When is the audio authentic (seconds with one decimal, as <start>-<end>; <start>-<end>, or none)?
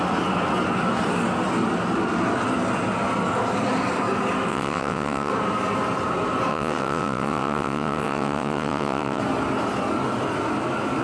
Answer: 0.0-4.5; 5.3-6.5; 9.2-11.0